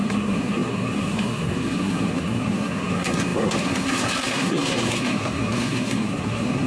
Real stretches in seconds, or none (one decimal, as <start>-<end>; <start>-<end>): none